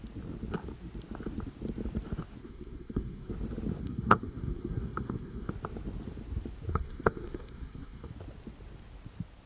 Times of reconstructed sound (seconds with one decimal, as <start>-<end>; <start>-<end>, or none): 2.4-3.3; 3.8-5.5; 6.7-8.1